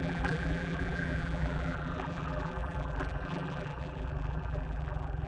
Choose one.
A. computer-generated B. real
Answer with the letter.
A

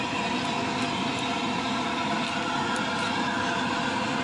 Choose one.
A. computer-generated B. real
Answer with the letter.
B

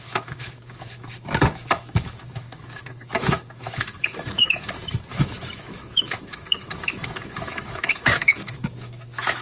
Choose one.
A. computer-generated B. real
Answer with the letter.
A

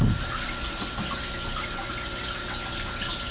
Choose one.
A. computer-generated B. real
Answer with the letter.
B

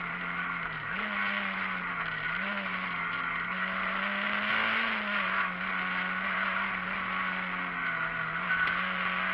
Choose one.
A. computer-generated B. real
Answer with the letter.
B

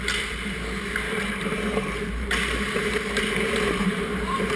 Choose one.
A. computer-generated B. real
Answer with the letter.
A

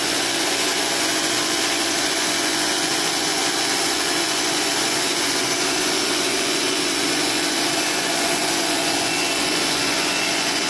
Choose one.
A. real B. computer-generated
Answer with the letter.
B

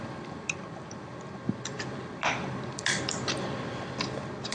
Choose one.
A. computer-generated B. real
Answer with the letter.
A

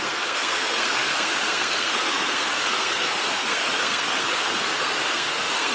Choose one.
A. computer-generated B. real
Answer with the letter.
A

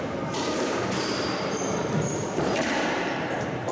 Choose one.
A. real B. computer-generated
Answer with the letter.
B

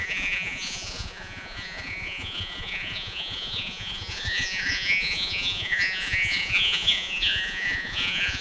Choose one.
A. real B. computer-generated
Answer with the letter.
B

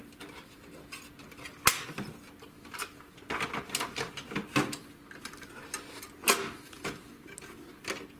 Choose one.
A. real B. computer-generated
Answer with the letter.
A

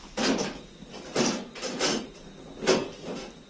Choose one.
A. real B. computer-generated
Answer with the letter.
A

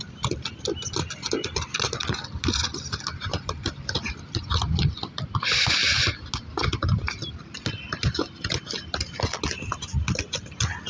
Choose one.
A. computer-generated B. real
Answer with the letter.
B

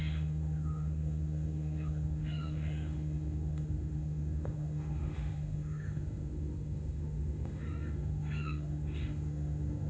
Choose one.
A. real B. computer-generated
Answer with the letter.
B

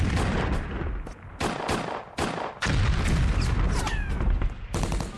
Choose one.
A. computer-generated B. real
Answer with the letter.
A